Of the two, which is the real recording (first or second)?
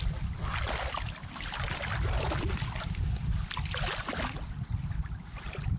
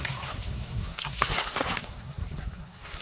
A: first